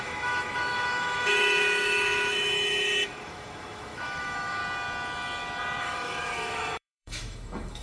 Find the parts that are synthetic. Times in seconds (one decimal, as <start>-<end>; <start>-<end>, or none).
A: 0.0-4.6; 5.8-7.8